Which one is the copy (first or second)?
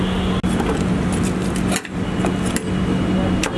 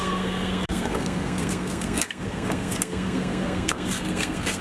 second